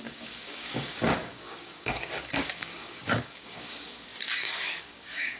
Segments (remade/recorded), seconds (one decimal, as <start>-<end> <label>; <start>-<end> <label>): 0.0-5.4 remade

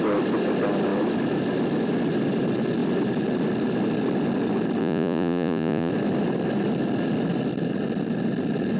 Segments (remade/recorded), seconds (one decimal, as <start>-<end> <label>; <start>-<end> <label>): 0.0-4.8 recorded; 4.8-5.9 remade; 5.9-8.8 recorded

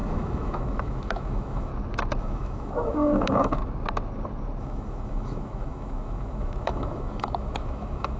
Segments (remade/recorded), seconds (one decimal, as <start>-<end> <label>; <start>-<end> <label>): 0.0-1.7 remade; 1.7-2.2 recorded; 2.2-3.6 remade; 3.6-4.6 recorded; 4.6-8.2 remade

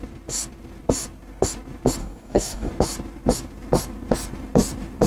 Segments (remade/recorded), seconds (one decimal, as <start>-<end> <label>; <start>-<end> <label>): 0.0-2.0 recorded; 2.0-2.7 remade; 2.7-5.1 recorded

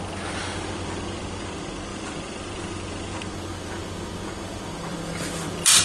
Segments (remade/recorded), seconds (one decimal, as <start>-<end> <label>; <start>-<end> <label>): 0.0-1.9 recorded; 1.9-3.1 remade; 3.1-4.9 recorded; 4.9-5.8 remade

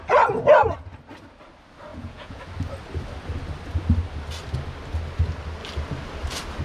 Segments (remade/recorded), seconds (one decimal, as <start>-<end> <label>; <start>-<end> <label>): 0.0-1.9 recorded; 1.9-2.4 remade; 2.4-6.6 recorded

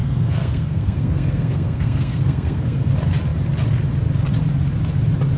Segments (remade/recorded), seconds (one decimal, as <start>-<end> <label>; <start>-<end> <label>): 0.0-2.9 remade; 2.9-5.4 recorded

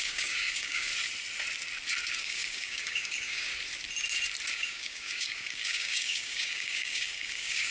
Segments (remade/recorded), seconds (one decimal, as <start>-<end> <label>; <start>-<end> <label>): 0.0-0.9 remade; 0.9-2.0 recorded; 2.0-3.5 remade; 3.5-4.5 recorded; 4.5-7.7 remade